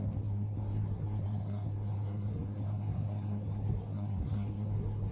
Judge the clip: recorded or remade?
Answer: remade